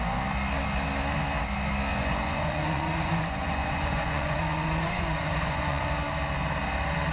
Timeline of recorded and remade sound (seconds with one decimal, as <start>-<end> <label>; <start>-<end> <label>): 0.0-1.9 recorded; 1.9-5.9 remade; 5.9-7.1 recorded